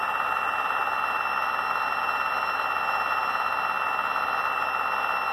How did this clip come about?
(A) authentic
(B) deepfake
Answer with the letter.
A